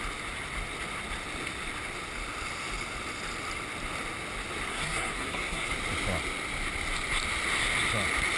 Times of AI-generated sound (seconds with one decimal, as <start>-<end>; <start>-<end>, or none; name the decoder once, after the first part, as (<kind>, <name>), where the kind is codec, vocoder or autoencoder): 4.7-5.7 (codec, SNAC)